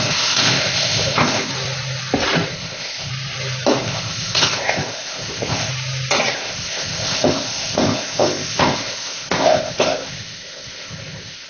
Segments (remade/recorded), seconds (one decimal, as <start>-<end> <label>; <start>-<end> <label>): 0.0-1.5 remade; 1.5-2.5 recorded; 2.5-3.1 remade; 3.1-3.8 recorded; 3.8-5.7 remade; 5.7-6.3 recorded; 6.3-11.5 remade

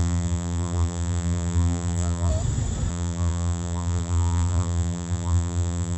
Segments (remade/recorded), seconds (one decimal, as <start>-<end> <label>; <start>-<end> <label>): 0.0-2.3 remade; 2.3-2.9 recorded; 2.9-6.0 remade

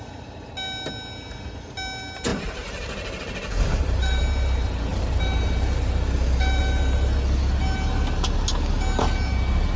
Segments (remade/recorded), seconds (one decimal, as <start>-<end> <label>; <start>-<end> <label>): 0.0-2.3 recorded; 2.3-4.2 remade; 4.2-4.9 recorded; 4.9-6.6 remade; 6.6-9.8 recorded

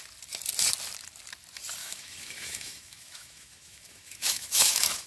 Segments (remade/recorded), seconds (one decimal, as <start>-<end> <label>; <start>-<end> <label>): 0.0-1.8 recorded; 1.8-5.1 remade

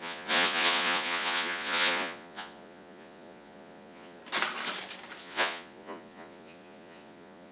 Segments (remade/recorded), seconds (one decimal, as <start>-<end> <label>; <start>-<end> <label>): 0.0-4.2 remade; 4.2-5.2 recorded; 5.2-7.5 remade

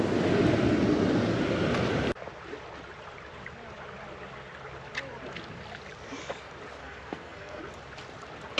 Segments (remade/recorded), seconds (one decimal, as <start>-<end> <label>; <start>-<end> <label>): 0.0-6.8 recorded; 6.8-7.6 remade; 7.6-8.6 recorded

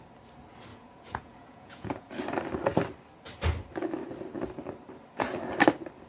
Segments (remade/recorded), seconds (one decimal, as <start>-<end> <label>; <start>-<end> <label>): 0.0-0.7 recorded; 0.7-2.1 remade; 2.1-6.1 recorded